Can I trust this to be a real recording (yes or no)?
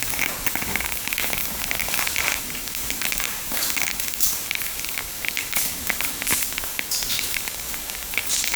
no